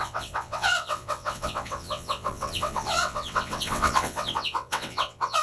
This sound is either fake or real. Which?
fake